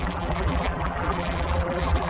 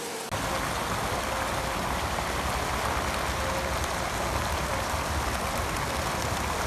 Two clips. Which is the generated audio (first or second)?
first